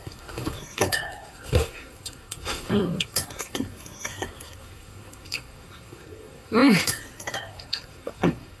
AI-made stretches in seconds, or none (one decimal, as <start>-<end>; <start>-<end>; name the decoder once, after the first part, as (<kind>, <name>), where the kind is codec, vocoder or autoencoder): 0.0-8.6 (codec, SNAC)